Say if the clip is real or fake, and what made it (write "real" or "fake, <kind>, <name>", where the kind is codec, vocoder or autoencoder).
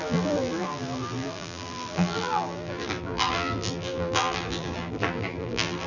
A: fake, vocoder, BigVGAN v2